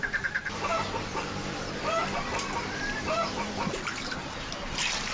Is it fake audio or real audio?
fake